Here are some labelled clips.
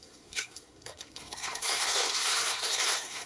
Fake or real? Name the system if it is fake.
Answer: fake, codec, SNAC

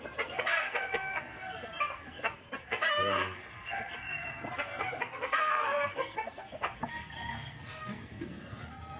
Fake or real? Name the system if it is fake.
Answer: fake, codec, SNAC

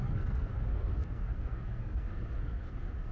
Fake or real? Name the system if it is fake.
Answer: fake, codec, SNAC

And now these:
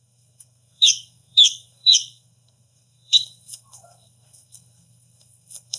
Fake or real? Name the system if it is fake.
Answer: fake, codec, SNAC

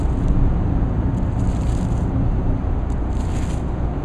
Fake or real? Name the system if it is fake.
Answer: real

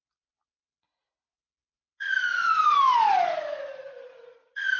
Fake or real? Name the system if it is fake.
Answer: real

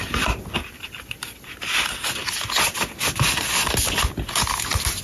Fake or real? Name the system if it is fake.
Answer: real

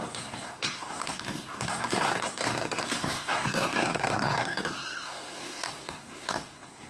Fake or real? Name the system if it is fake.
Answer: fake, codec, SNAC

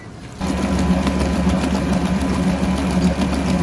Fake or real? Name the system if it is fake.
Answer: real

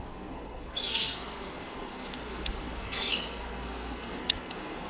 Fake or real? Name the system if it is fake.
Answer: fake, codec, SNAC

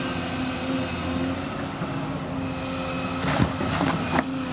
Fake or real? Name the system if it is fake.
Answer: real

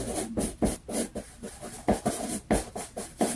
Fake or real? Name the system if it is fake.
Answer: real